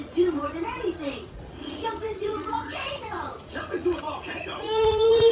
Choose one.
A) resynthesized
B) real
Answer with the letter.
A